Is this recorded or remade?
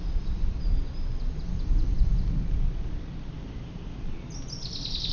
recorded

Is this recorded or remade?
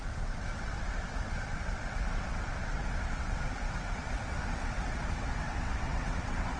remade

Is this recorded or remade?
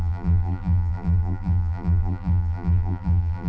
remade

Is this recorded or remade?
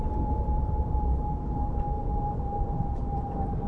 remade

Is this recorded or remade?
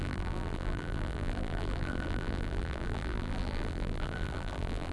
remade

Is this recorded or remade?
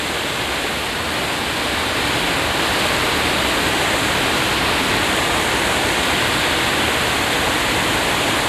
recorded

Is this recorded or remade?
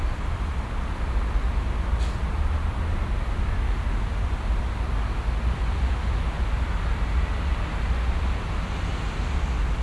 recorded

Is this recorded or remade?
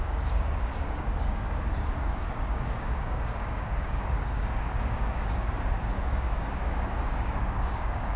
remade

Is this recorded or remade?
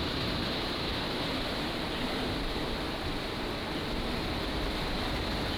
recorded